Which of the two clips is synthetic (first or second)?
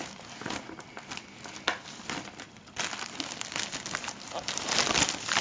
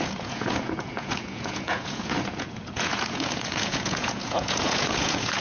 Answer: second